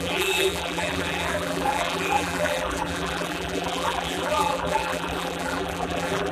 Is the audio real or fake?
fake